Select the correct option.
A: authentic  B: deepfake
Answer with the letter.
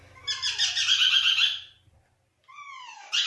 A